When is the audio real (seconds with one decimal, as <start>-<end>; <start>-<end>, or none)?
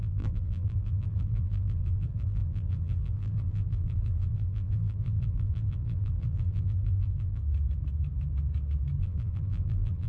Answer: 7.4-9.0